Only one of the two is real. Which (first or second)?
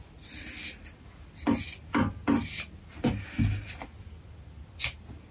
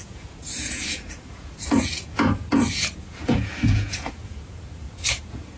first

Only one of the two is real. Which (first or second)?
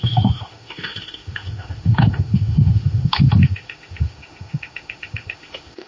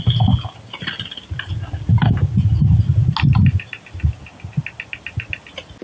second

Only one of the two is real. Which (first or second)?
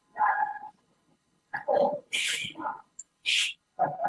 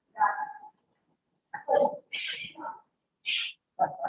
second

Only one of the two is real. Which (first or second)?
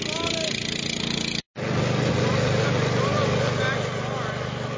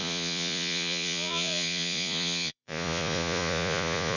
first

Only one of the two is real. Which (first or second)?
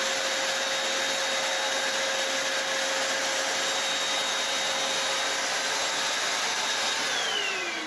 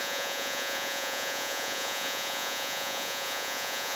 first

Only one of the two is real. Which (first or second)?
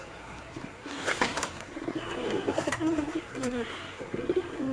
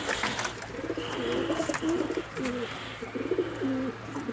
second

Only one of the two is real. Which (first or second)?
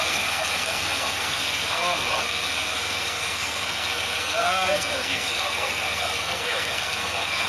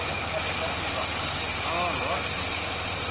second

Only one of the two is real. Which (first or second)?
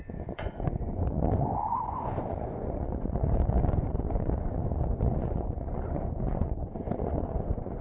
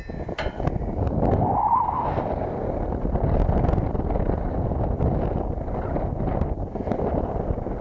second